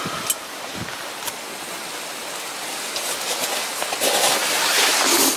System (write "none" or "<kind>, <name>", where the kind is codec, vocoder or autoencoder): none